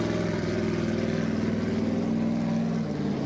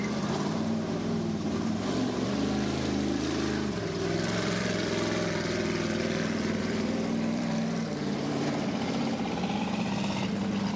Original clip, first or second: first